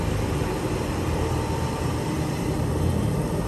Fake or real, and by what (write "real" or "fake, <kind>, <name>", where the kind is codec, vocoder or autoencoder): fake, vocoder, BigVGAN v2